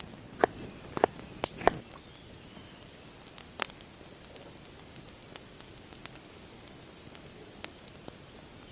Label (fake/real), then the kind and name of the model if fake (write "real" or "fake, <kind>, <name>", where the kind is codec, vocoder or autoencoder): real